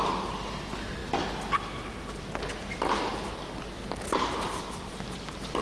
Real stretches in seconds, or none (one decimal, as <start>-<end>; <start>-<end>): 0.0-5.6